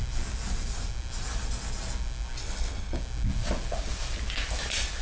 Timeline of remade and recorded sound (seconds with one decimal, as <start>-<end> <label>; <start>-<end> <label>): 0.0-2.4 recorded; 2.4-3.0 remade; 3.0-5.0 recorded